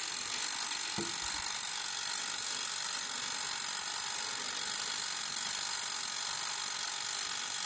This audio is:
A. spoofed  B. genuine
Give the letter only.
B